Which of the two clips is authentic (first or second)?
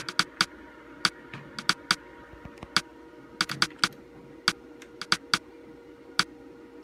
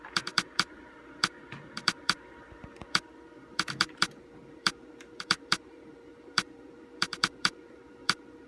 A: first